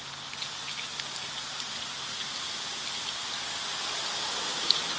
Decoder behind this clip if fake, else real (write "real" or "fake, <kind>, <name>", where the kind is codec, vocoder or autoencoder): real